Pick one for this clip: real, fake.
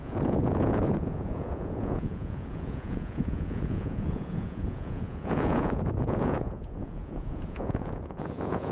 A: fake